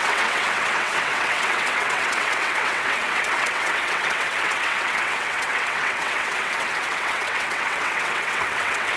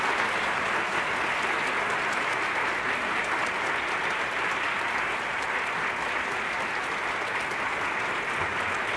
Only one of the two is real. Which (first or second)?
second